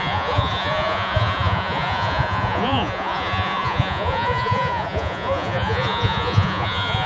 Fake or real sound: fake